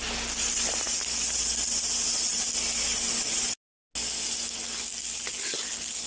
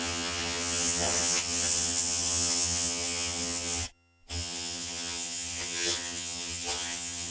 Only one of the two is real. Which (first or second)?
first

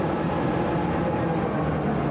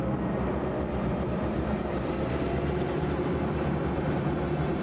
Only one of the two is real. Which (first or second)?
first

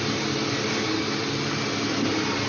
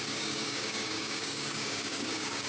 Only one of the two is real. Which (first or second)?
first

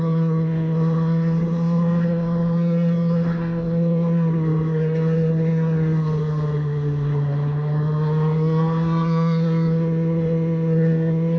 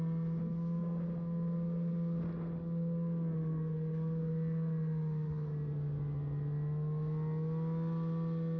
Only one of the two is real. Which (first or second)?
second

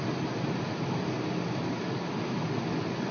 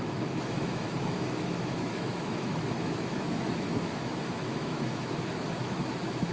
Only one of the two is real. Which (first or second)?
first